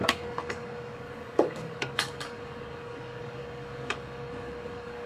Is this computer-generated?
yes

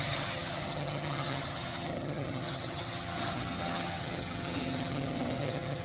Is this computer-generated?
yes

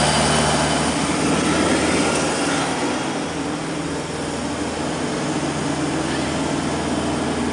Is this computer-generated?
no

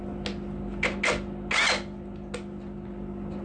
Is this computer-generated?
no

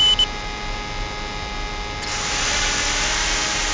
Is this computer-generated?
no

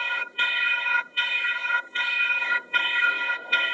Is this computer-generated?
yes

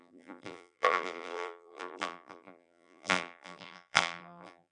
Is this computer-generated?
yes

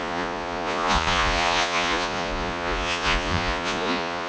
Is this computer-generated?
yes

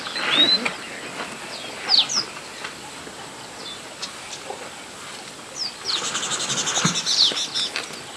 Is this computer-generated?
no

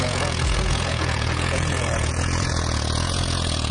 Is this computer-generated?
yes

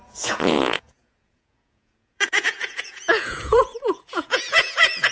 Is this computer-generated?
yes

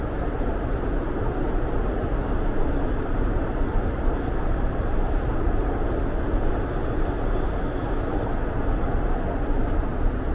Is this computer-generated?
no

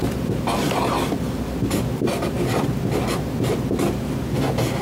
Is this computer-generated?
no